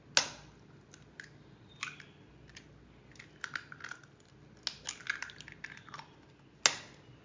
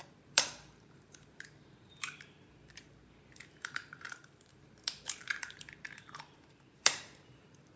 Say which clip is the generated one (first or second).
second